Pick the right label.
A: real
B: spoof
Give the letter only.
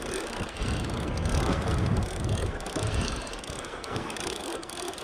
B